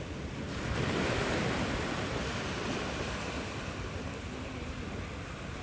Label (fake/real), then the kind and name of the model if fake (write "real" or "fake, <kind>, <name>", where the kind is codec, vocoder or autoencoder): real